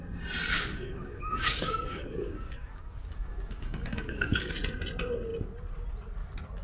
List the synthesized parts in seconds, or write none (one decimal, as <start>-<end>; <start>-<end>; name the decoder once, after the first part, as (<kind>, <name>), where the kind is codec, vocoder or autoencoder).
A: 0.5-4.5 (codec, DAC)